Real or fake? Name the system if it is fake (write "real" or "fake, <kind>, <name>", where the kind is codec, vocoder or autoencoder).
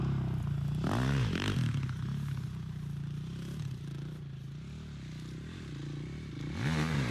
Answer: real